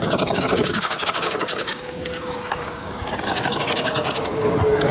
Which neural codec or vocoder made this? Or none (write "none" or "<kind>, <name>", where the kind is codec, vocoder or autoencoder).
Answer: codec, DAC